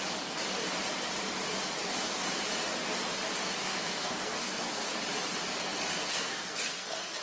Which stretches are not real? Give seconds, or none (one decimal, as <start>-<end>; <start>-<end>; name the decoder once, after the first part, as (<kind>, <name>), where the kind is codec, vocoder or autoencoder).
3.6-5.0 (codec, SNAC); 6.0-7.2